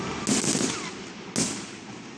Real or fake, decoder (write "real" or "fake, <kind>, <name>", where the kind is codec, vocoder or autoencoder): real